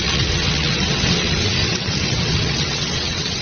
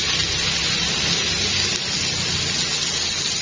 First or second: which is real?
second